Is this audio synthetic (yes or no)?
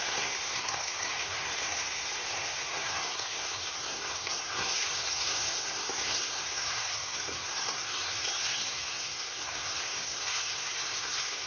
yes